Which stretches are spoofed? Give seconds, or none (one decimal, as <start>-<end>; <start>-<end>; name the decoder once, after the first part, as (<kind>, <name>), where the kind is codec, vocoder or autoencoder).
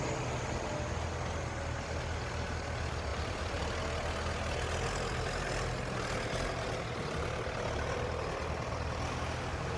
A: 3.1-3.8 (vocoder, BigVGAN v2)